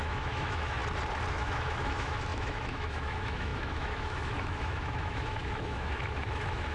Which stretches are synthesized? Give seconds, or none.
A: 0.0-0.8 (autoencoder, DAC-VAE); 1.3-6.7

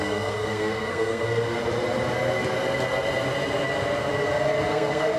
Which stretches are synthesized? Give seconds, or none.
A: 0.0-1.6 (codec, SNAC); 4.7-5.2

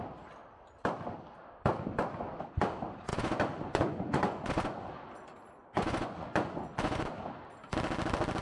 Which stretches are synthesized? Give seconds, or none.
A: 3.1-4.9 (vocoder, Vocos); 5.6-7.1